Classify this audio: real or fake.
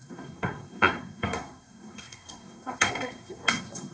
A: fake